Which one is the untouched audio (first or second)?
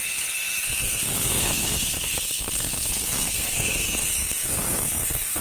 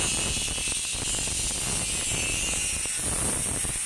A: second